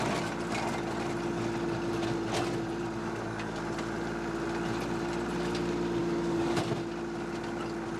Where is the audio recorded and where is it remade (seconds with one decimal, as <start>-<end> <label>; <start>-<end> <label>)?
0.0-3.0 recorded; 3.0-3.6 remade; 3.6-6.0 recorded; 6.0-6.6 remade; 6.6-8.0 recorded